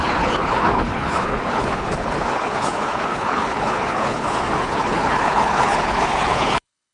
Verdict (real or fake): fake